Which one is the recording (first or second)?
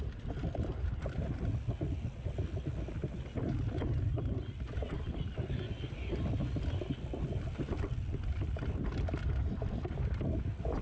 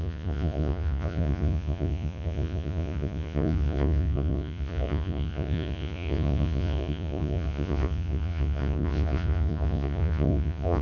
first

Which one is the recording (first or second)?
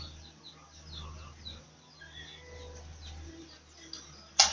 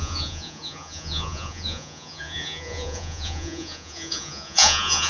first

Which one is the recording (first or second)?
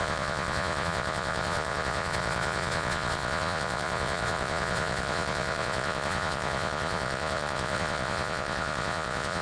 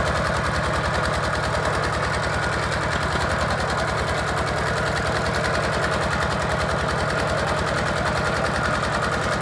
second